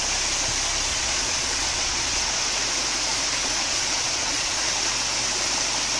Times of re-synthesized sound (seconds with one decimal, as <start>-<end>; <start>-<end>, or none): 0.9-2.4; 3.4-4.6